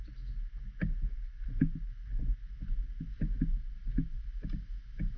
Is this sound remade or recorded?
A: recorded